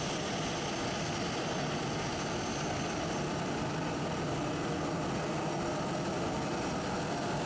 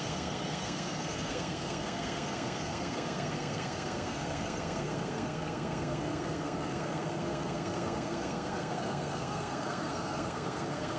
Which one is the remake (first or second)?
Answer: second